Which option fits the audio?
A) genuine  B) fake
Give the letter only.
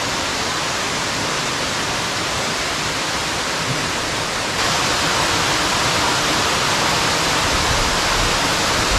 A